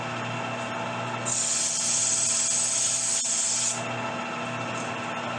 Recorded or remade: recorded